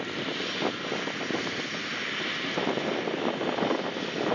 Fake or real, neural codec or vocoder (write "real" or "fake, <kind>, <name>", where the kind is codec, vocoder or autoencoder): real